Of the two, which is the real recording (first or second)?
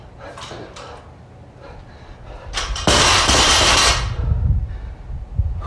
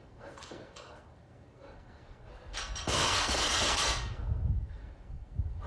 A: first